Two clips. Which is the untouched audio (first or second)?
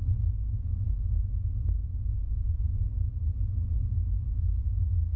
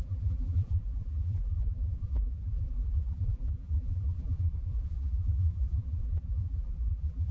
first